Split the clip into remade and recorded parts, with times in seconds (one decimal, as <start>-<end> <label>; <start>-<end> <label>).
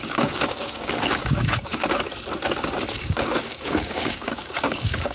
0.0-1.8 remade; 1.8-2.9 recorded; 2.9-5.1 remade